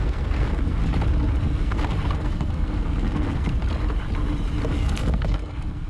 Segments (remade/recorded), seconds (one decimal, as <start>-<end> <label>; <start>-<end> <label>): 0.0-0.8 remade; 0.8-1.4 recorded; 1.4-3.6 remade; 3.6-4.7 recorded; 4.7-5.9 remade